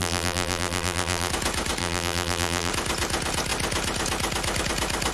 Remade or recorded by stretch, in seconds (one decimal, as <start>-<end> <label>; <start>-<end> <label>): 0.0-1.3 remade; 1.3-1.8 recorded; 1.8-2.7 remade; 2.7-5.1 recorded